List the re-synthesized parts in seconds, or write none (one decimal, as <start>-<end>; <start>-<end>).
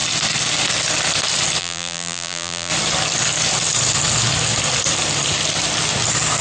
1.6-2.7